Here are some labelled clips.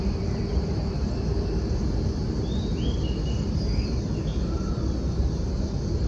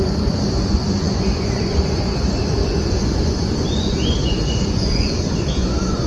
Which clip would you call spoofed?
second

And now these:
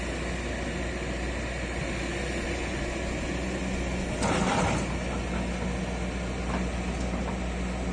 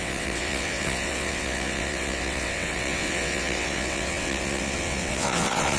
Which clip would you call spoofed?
second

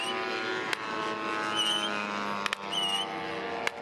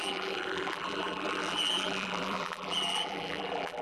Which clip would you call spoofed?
second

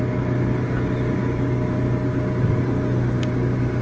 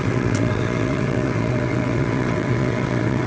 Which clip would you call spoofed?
second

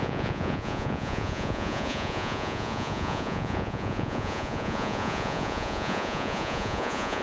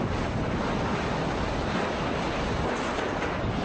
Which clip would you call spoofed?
first